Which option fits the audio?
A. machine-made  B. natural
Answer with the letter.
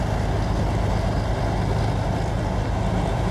B